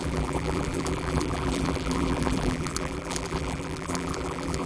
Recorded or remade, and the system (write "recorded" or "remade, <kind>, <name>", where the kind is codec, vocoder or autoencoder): remade, vocoder, BigVGAN v2